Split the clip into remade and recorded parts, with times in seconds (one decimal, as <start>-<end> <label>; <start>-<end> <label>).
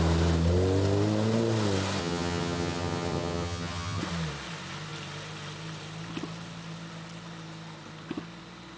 0.0-2.0 recorded; 2.0-4.0 remade; 4.0-8.8 recorded